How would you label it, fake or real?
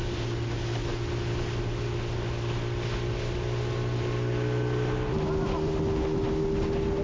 real